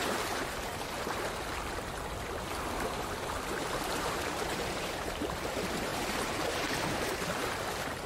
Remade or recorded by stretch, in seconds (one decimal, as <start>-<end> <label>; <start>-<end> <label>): 0.0-0.7 remade; 0.7-3.6 recorded; 3.6-8.1 remade